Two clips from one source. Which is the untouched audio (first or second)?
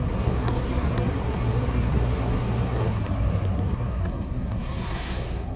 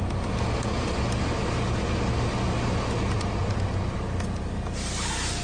second